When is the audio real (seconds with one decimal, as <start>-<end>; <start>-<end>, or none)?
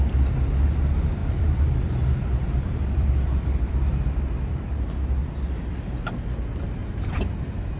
0.0-1.2; 4.7-5.2; 5.9-6.8